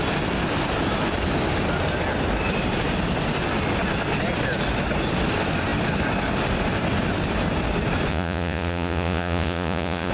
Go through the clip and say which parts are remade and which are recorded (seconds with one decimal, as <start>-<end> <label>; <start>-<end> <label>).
0.0-8.1 recorded; 8.1-10.1 remade